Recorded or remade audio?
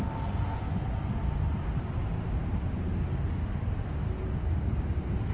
recorded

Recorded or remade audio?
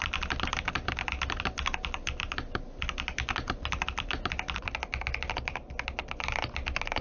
recorded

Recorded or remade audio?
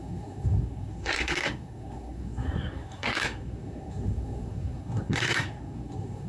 remade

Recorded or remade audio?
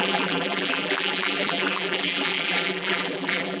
remade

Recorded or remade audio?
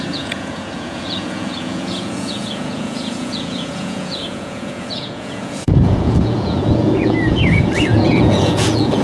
remade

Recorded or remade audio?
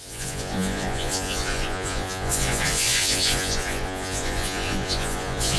remade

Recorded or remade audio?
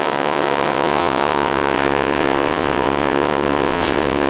remade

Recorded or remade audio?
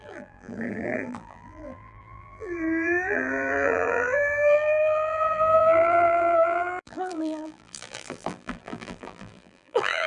remade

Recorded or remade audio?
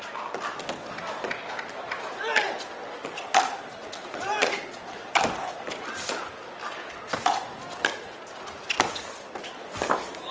recorded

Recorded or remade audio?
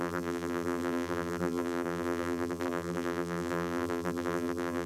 remade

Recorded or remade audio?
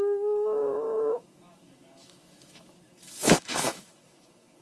remade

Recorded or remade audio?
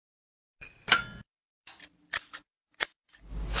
recorded